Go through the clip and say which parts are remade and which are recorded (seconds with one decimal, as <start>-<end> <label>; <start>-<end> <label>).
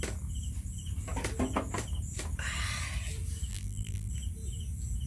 0.0-3.5 recorded; 3.5-4.1 remade; 4.1-5.1 recorded